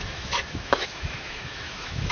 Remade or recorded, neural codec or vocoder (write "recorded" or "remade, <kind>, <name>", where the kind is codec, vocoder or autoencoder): remade, autoencoder, DAC-VAE